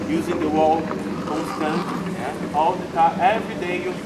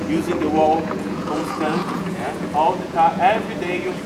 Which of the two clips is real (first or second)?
first